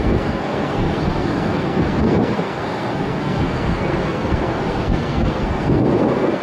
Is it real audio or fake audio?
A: fake